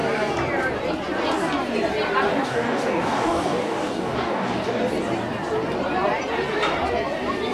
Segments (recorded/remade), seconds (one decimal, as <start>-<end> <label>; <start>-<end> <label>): 0.0-2.3 recorded; 2.3-4.8 remade; 4.8-7.5 recorded